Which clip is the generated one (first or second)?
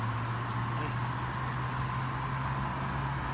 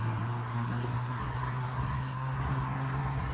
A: second